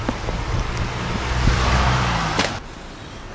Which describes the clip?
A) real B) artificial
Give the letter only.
A